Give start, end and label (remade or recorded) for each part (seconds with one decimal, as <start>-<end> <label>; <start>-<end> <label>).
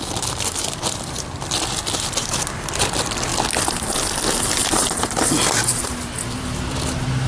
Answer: 0.0-3.3 remade; 3.3-4.4 recorded; 4.4-7.3 remade